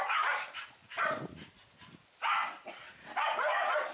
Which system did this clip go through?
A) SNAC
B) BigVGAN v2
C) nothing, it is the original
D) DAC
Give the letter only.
C